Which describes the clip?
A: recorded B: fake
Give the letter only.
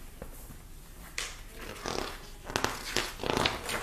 A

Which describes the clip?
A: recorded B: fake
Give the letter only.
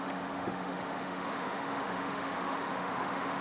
B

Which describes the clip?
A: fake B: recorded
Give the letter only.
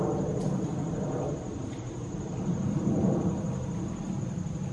B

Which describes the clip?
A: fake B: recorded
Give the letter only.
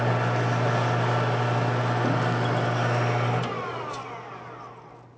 B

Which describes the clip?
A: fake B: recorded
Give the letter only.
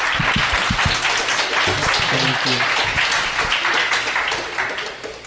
B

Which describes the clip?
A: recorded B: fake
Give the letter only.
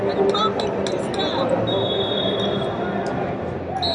A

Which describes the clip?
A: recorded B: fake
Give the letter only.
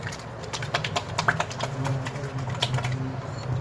A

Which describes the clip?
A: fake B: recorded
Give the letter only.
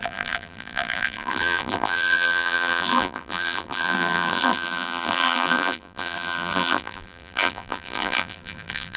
A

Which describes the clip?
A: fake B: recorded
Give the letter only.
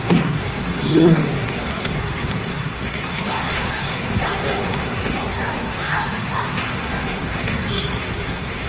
A